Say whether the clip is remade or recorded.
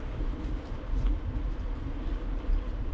remade